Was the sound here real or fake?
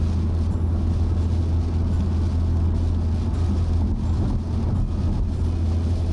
real